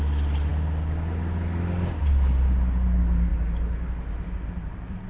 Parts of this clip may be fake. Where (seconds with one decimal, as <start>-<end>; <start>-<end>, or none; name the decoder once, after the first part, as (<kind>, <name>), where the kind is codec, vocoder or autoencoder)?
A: 3.3-5.1 (vocoder, BigVGAN v2)